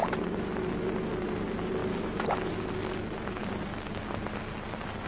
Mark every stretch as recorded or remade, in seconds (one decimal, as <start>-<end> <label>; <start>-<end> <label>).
0.0-5.1 recorded